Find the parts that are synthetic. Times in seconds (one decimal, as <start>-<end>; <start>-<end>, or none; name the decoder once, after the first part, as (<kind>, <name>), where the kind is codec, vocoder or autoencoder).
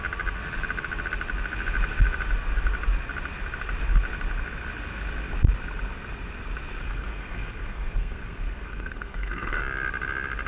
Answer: 6.8-9.6 (codec, SNAC)